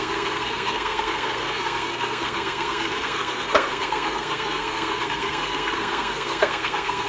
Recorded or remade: remade